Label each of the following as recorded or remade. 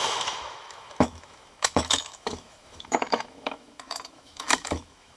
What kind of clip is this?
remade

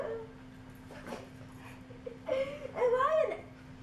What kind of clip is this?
recorded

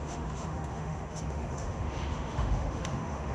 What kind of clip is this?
remade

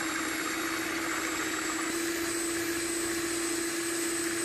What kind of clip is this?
recorded